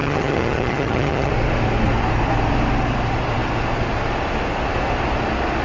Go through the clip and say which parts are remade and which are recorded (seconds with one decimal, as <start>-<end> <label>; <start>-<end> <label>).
0.0-1.3 remade; 1.3-5.6 recorded

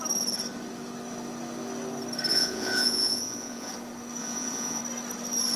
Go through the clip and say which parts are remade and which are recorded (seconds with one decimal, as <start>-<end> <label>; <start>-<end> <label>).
0.0-2.3 recorded; 2.3-3.7 remade; 3.7-4.2 recorded; 4.2-4.8 remade; 4.8-5.6 recorded